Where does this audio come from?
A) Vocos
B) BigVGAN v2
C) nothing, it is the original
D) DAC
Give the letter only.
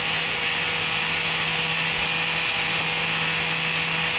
C